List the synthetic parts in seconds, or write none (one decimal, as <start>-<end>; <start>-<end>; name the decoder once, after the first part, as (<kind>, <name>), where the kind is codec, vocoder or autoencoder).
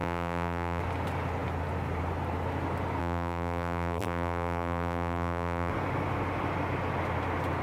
0.0-0.8 (vocoder, BigVGAN v2); 3.0-5.7